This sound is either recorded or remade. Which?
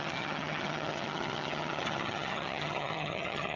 remade